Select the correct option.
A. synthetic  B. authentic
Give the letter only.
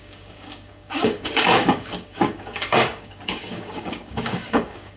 A